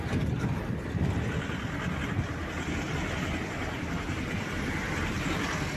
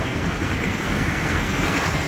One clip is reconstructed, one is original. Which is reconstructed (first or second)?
second